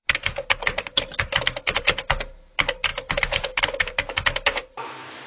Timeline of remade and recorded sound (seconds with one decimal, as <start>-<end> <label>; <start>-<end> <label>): 0.0-5.3 recorded